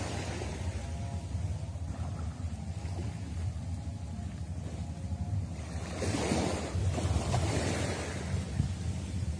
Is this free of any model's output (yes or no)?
yes